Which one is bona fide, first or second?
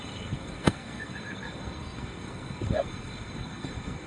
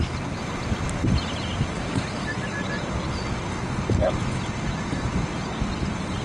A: second